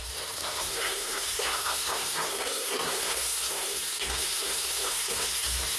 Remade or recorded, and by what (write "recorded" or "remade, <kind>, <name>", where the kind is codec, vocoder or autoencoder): remade, codec, SNAC